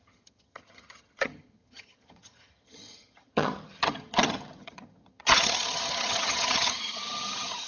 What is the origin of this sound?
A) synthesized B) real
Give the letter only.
A